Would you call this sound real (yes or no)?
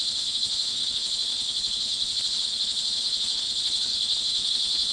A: no